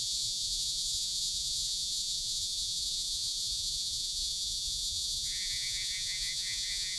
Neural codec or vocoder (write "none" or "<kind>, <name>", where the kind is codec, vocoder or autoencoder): vocoder, Vocos